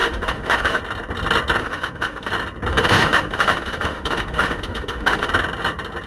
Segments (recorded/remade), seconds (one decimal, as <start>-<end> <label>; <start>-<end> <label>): 0.0-0.8 remade; 0.8-1.6 recorded; 1.6-2.3 remade; 2.3-2.7 recorded; 2.7-5.3 remade; 5.3-6.1 recorded